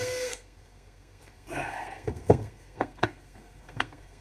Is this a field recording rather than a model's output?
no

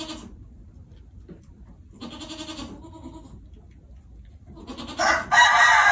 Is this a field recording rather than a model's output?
yes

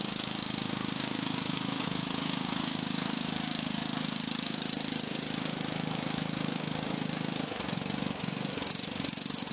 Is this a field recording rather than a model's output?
no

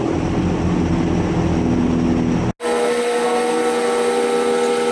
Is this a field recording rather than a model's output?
yes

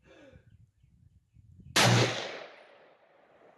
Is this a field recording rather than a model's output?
yes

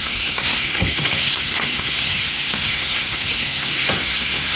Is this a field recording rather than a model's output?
no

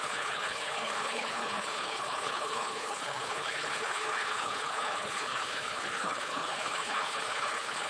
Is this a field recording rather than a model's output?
no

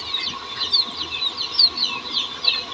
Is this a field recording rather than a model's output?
yes